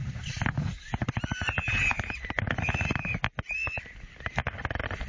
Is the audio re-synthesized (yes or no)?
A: no